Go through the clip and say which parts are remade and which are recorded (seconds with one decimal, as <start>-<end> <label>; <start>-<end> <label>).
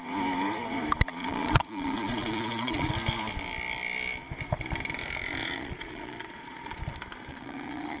0.0-1.2 recorded; 1.2-2.9 remade; 2.9-5.4 recorded; 5.4-6.8 remade; 6.8-7.3 recorded; 7.3-8.0 remade